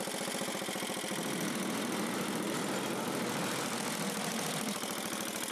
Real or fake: real